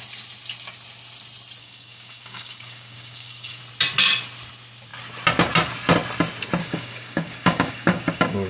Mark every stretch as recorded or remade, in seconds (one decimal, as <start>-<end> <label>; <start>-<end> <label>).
0.0-1.6 recorded; 1.6-3.6 remade; 3.6-6.6 recorded; 6.6-8.5 remade